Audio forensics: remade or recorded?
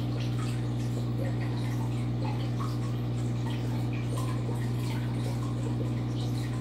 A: recorded